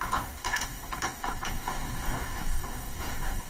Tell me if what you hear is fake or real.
fake